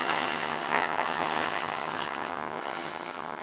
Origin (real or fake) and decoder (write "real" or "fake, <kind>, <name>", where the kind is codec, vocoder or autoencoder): fake, vocoder, HiFi-GAN